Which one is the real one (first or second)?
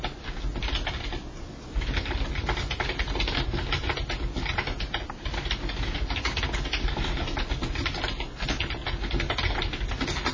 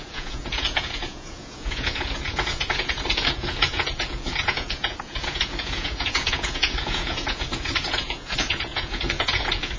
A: first